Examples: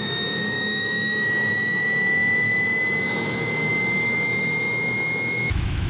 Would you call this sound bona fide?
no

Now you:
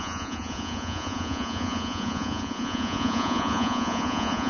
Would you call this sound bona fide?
no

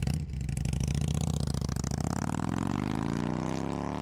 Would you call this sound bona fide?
yes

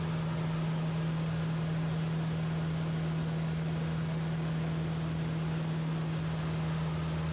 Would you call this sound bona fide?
yes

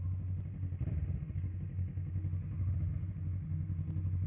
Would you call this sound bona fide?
yes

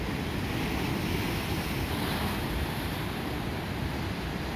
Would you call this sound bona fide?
yes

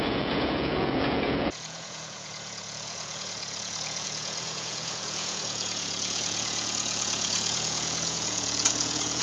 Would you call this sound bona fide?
no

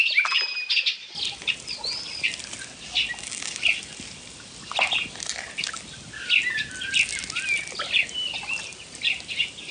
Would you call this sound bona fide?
yes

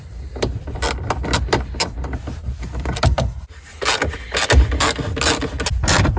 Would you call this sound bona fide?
yes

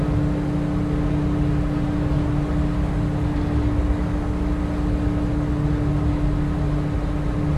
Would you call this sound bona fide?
yes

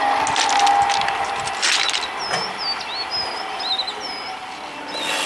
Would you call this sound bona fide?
yes